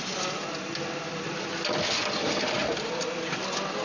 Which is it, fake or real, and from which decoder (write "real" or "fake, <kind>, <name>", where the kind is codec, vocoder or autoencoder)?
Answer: real